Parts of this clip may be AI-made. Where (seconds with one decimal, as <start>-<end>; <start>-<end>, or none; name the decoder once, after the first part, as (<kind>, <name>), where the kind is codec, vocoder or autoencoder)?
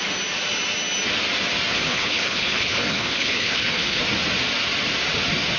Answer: 1.7-4.0 (codec, HILCodec)